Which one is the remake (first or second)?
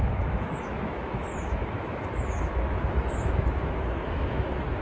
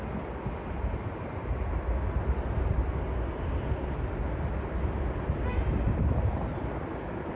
first